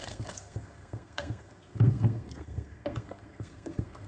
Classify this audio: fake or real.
fake